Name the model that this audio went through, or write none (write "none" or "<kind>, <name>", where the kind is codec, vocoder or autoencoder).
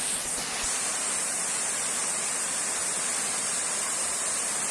none